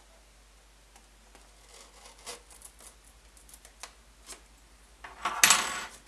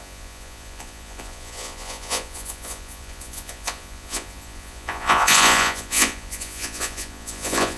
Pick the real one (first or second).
first